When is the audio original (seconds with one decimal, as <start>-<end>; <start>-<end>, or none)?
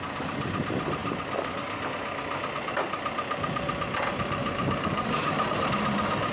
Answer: 0.0-4.4; 5.7-6.3